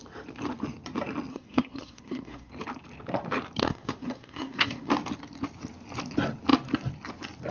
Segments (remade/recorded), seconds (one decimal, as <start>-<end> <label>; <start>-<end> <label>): 0.0-1.3 recorded; 1.3-2.5 remade; 2.5-3.6 recorded; 3.6-4.9 remade; 4.9-7.5 recorded